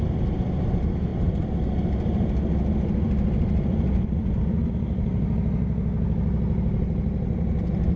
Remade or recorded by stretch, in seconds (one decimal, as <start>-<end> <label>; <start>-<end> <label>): 0.0-8.0 recorded